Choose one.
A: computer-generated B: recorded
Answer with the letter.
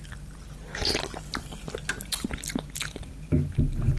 B